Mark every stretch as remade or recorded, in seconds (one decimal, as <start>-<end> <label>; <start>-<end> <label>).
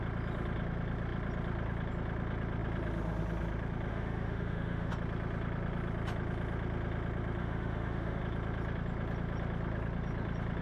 0.0-3.9 recorded; 3.9-4.9 remade; 4.9-7.4 recorded; 7.4-8.2 remade; 8.2-10.6 recorded